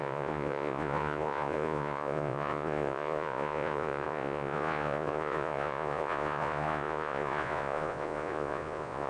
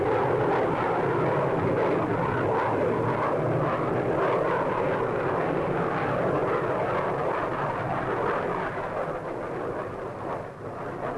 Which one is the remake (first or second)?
first